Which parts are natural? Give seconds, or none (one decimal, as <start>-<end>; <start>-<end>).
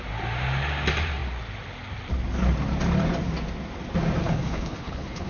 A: 0.0-4.2